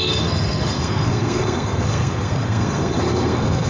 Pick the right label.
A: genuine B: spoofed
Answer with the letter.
B